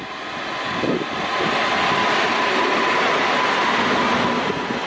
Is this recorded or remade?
recorded